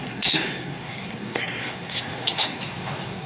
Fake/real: fake